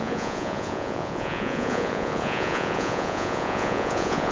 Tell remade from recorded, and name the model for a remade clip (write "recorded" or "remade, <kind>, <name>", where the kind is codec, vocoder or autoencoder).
remade, vocoder, Vocos